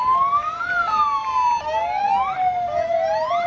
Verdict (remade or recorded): recorded